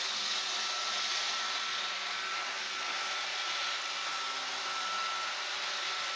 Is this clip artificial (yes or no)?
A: no